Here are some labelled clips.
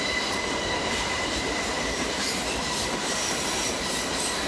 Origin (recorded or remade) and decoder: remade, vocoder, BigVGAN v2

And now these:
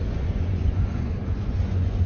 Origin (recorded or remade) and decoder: remade, vocoder, Vocos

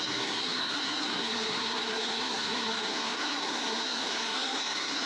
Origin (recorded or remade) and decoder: remade, codec, SNAC